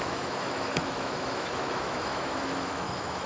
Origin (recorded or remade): remade